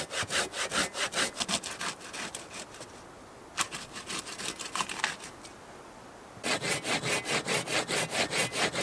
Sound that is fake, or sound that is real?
real